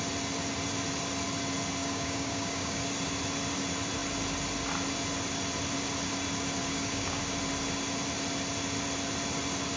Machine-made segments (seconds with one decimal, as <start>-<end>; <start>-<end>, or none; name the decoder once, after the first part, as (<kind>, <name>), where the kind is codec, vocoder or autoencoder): 1.8-2.8 (codec, DAC); 6.6-7.2

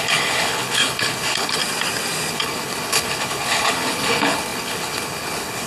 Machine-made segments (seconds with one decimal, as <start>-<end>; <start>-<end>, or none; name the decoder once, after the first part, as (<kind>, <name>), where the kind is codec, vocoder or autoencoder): 0.0-1.6 (codec, HILCodec); 2.3-5.7